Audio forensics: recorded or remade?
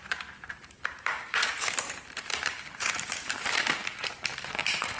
remade